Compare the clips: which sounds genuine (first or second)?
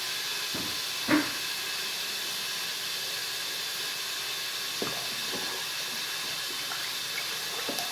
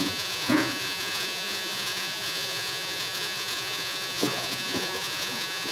first